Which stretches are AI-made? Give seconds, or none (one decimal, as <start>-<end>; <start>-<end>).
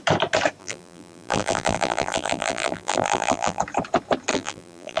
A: 0.6-3.6; 4.3-5.0